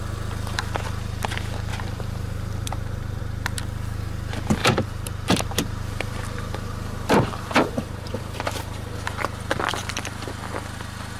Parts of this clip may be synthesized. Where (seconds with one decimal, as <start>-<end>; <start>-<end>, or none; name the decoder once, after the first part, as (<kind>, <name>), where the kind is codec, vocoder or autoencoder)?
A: 1.7-3.2 (vocoder, BigVGAN v2); 4.6-8.9; 9.7-10.3